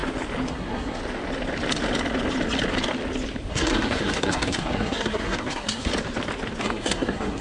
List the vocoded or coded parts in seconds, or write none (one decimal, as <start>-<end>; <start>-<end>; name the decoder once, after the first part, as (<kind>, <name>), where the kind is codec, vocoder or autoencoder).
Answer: 0.5-1.0 (codec, SNAC); 3.5-5.9; 6.6-7.4